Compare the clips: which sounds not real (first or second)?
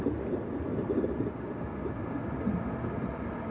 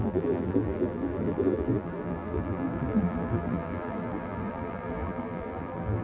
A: second